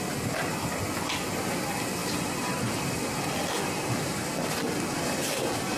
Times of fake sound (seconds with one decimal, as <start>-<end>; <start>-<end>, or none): none